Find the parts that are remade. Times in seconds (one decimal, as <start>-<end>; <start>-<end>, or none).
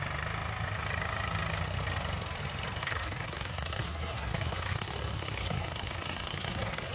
2.8-6.9